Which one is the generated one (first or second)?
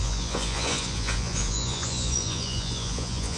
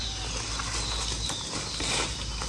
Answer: first